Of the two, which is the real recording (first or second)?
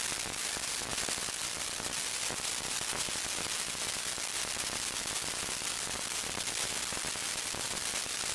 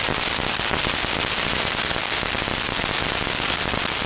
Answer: second